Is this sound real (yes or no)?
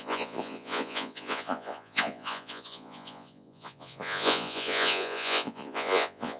no